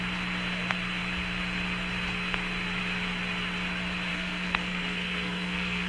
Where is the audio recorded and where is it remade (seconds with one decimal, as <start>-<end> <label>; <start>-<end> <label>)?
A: 0.0-4.1 recorded; 4.1-5.9 remade